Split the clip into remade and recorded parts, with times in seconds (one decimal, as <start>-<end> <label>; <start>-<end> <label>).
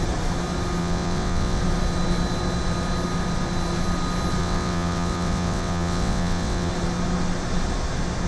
0.0-0.8 recorded; 0.8-1.6 remade; 1.6-4.4 recorded; 4.4-6.7 remade; 6.7-8.3 recorded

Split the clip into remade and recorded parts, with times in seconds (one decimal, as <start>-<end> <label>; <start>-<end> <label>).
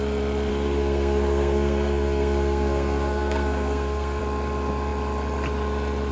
0.0-0.5 recorded; 0.5-4.2 remade; 4.2-6.1 recorded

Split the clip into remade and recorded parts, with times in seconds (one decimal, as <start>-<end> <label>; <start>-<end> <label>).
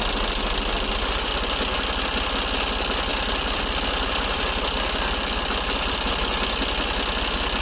0.0-3.1 recorded; 3.1-6.1 remade; 6.1-7.6 recorded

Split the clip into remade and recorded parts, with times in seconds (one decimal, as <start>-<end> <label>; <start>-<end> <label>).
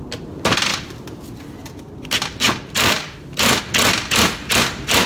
0.0-0.7 recorded; 0.7-3.6 remade; 3.6-5.1 recorded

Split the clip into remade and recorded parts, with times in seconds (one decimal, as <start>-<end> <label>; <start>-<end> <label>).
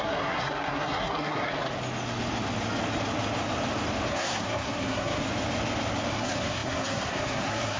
0.0-1.5 remade; 1.5-4.1 recorded; 4.1-5.2 remade; 5.2-6.1 recorded; 6.1-7.8 remade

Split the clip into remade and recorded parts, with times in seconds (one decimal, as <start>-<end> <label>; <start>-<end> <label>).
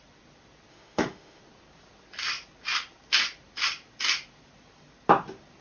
0.0-0.7 recorded; 0.7-1.4 remade; 1.4-5.6 recorded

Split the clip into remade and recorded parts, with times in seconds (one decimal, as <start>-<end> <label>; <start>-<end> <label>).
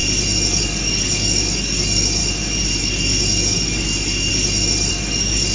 0.0-0.5 recorded; 0.5-2.2 remade; 2.2-2.8 recorded; 2.8-4.3 remade; 4.3-4.9 recorded; 4.9-5.5 remade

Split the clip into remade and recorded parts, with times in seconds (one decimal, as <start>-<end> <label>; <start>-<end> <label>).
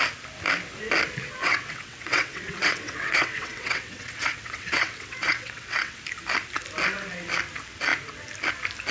0.0-1.4 recorded; 1.4-6.0 remade; 6.0-8.9 recorded